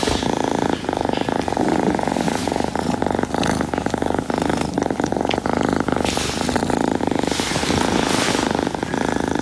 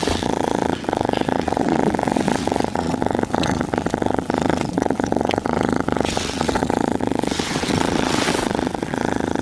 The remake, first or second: second